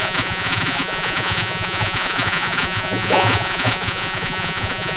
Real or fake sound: fake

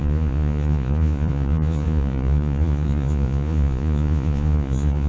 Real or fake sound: fake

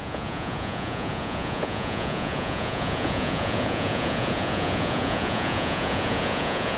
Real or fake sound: fake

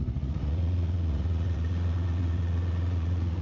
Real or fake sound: fake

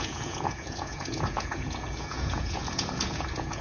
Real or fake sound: fake